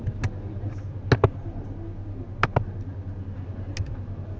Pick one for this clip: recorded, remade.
recorded